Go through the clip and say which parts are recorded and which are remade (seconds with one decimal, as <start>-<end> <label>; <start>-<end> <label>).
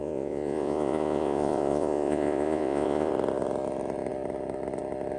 0.0-3.1 remade; 3.1-5.2 recorded